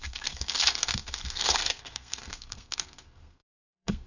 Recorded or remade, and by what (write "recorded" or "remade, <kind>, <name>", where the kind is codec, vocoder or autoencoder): remade, codec, SNAC